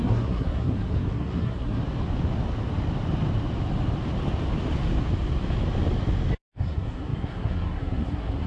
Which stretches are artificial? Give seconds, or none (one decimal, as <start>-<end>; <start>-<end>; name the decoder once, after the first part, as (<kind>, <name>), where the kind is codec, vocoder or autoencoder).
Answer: 0.0-1.8 (codec, SNAC); 6.6-8.5